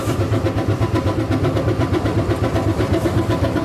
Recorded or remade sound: recorded